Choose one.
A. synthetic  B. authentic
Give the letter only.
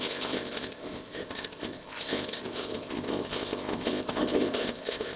A